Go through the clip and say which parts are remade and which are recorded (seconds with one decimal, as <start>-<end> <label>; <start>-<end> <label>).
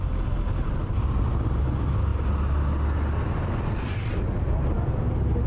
0.0-5.5 recorded